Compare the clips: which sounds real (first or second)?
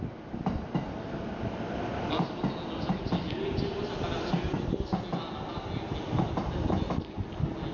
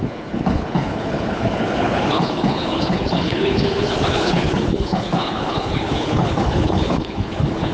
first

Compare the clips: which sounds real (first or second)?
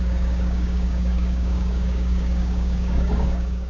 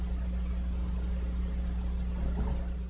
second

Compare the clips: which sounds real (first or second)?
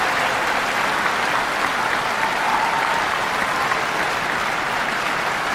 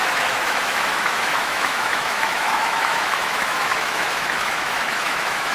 first